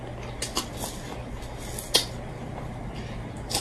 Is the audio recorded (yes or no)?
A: yes